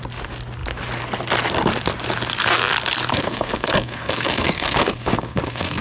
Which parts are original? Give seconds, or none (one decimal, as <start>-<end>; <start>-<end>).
0.0-3.1